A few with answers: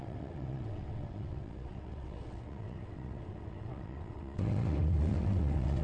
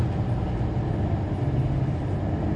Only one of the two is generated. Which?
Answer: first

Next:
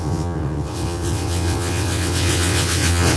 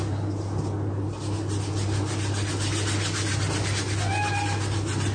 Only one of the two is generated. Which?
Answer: first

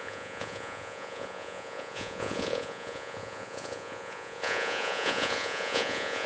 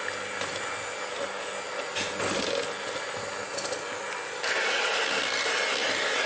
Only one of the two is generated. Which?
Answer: first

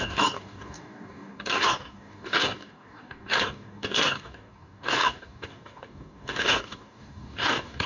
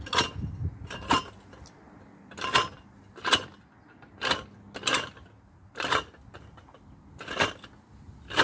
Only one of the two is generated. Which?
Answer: first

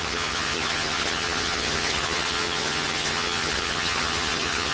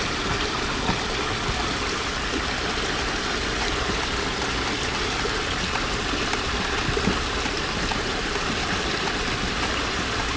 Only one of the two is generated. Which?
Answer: first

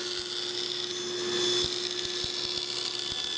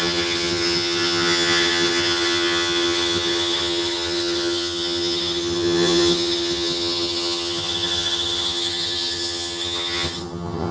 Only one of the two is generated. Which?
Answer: second